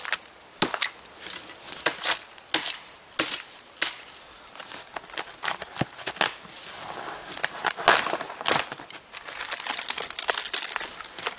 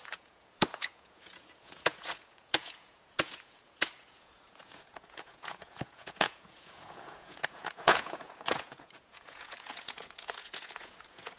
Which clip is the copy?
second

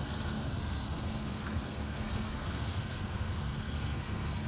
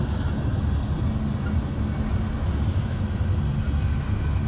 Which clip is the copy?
first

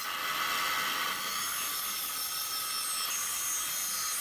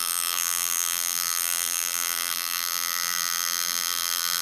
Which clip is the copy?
second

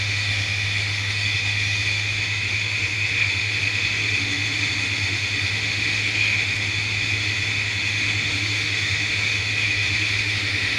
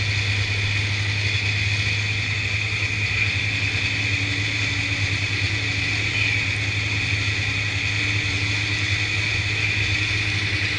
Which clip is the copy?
first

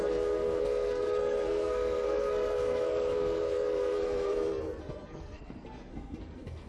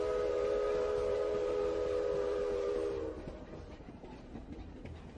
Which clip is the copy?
first